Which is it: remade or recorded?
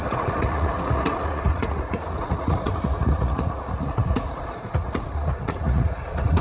remade